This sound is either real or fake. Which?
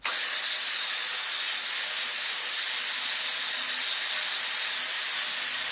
real